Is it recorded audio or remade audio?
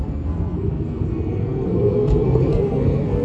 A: remade